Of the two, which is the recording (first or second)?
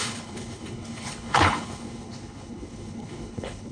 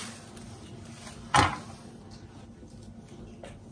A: second